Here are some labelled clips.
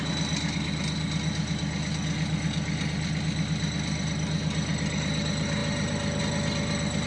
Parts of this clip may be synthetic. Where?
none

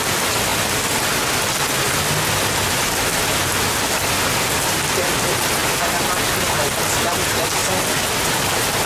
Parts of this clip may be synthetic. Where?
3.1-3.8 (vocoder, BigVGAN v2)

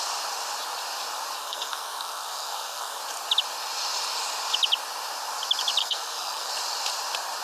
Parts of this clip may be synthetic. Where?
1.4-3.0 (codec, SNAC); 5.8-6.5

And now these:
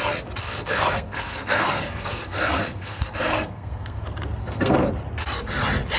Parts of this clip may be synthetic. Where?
0.4-4.0 (codec, SNAC); 4.4-4.9

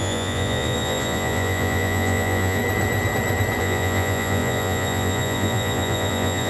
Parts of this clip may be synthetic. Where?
0.0-2.6 (vocoder, Vocos); 3.6-6.5

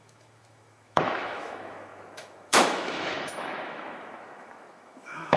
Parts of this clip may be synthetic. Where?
0.0-5.4 (autoencoder, DAC-VAE)